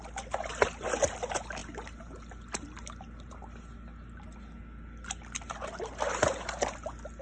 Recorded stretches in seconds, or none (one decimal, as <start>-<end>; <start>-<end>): 0.0-7.2